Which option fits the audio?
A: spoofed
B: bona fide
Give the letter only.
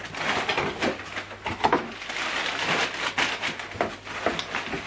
A